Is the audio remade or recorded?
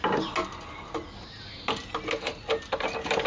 recorded